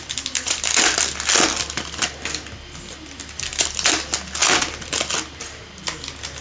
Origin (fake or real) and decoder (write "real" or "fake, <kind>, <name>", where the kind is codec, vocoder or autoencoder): real